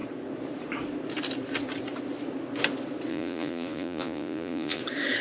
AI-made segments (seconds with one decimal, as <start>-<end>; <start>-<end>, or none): 3.1-4.8